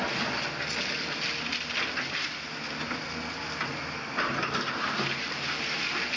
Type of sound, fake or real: real